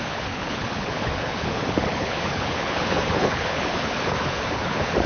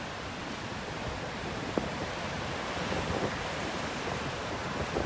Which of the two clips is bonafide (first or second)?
second